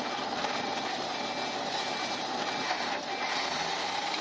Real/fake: real